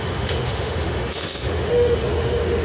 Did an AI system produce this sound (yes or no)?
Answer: yes